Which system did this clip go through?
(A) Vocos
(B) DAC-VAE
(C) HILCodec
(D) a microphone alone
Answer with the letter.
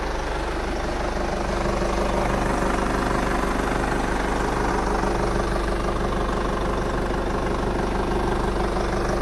D